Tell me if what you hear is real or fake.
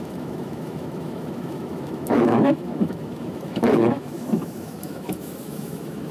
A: fake